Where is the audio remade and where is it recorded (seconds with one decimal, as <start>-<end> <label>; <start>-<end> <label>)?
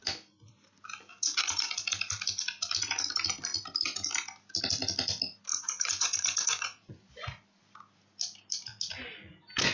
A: 0.0-1.1 recorded; 1.1-1.8 remade; 1.8-5.5 recorded; 5.5-6.9 remade; 6.9-9.7 recorded